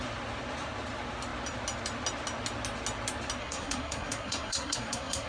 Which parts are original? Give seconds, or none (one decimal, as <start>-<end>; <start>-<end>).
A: 0.0-3.4